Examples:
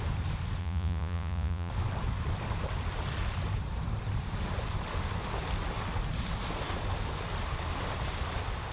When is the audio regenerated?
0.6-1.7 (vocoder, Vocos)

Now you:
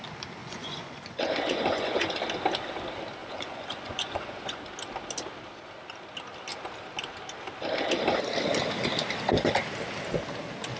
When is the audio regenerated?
0.4-2.1 (vocoder, Vocos); 3.2-4.6

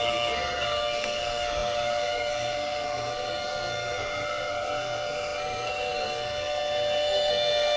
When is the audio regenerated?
0.0-7.8 (codec, SNAC)